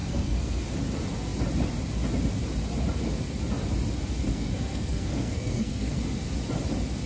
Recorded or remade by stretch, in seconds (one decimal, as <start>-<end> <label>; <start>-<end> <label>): 0.0-0.6 remade; 0.6-4.3 recorded; 4.3-6.0 remade; 6.0-7.1 recorded